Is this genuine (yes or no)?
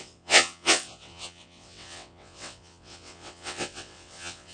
no